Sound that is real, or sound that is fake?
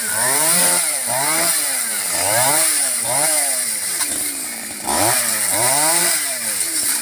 fake